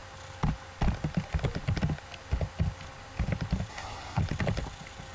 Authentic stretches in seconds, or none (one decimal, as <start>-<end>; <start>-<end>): 0.0-3.7; 4.2-5.1